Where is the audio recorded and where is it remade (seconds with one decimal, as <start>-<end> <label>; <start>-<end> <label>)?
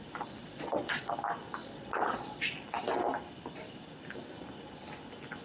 0.0-0.4 recorded; 0.4-1.1 remade; 1.1-1.6 recorded; 1.6-2.5 remade; 2.5-5.4 recorded